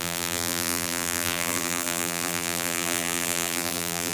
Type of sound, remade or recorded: remade